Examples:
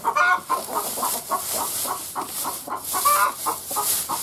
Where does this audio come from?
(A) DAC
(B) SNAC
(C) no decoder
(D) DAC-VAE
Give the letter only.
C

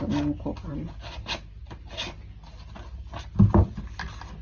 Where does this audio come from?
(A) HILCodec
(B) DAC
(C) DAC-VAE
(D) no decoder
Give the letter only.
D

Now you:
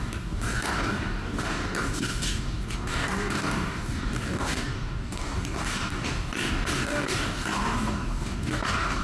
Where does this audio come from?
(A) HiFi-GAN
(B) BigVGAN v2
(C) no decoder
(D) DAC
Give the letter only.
D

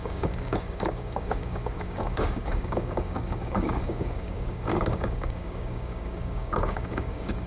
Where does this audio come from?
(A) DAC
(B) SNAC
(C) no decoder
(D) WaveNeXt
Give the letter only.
A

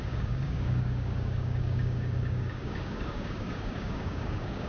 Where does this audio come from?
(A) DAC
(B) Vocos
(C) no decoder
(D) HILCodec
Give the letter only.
A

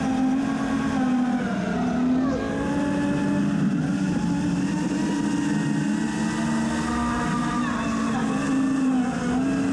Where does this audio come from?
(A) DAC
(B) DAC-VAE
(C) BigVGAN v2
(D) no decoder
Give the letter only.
D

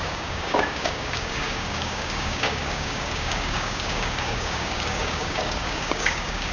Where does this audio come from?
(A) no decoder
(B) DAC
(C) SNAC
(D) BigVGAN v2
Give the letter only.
B